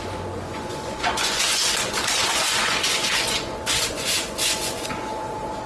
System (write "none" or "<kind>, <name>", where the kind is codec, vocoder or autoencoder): vocoder, Vocos